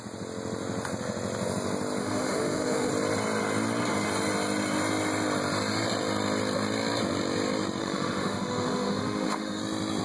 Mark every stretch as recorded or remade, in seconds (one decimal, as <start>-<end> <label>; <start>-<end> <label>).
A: 0.0-2.0 recorded; 2.0-2.9 remade; 2.9-7.8 recorded; 7.8-9.6 remade; 9.6-10.0 recorded